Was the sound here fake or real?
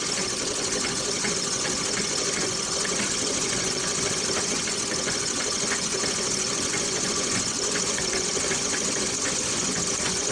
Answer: fake